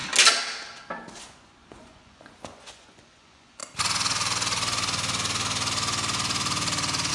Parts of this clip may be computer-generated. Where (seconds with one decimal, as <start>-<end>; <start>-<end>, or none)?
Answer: 1.2-3.6